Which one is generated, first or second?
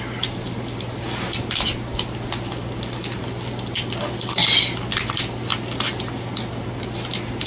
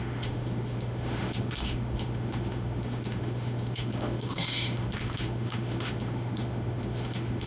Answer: second